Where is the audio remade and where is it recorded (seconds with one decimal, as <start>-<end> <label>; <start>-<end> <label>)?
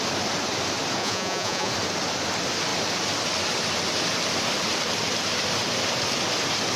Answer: 0.0-1.0 recorded; 1.0-1.7 remade; 1.7-6.8 recorded